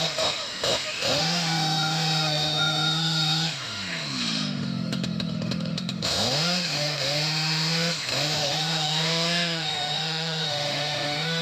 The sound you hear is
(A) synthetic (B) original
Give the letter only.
A